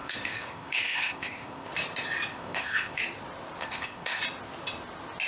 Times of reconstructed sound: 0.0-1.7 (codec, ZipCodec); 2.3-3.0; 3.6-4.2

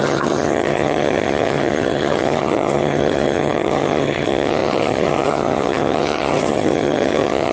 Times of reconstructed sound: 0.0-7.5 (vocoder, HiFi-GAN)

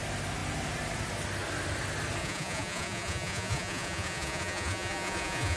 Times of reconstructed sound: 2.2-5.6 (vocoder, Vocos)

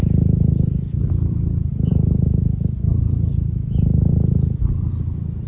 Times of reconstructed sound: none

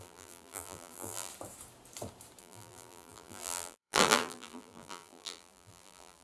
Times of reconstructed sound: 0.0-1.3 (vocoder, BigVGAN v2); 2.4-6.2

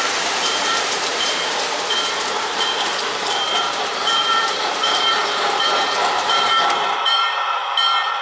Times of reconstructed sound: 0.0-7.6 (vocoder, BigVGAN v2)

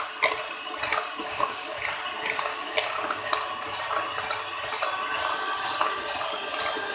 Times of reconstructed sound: 1.2-1.8 (codec, DAC); 2.5-3.3

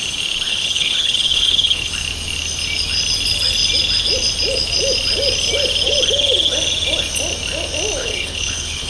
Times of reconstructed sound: 0.5-1.9 (codec, HILCodec); 8.0-8.9